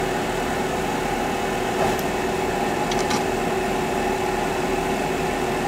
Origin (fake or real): real